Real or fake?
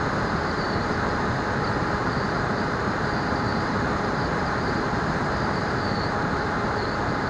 fake